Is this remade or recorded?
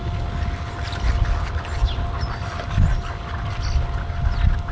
recorded